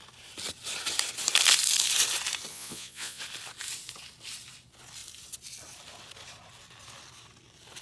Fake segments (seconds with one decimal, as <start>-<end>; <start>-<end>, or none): 2.5-3.2